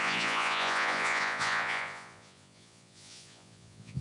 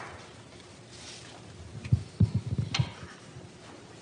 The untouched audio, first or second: second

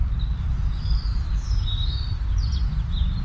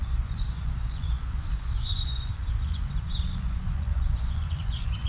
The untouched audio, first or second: first